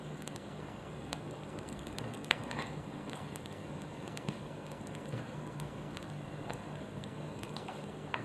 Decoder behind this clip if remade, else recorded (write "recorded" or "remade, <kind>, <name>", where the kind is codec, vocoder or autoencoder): remade, codec, SNAC